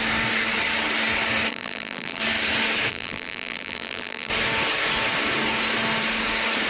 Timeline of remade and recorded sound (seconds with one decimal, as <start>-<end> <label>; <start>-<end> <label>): 0.0-1.5 recorded; 1.5-2.2 remade; 2.2-2.9 recorded; 2.9-4.3 remade; 4.3-6.7 recorded